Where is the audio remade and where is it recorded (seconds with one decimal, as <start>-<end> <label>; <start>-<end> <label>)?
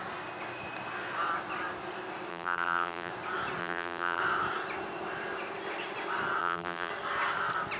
0.0-2.3 recorded; 2.3-3.1 remade; 3.1-3.6 recorded; 3.6-4.2 remade; 4.2-6.4 recorded; 6.4-6.9 remade; 6.9-7.8 recorded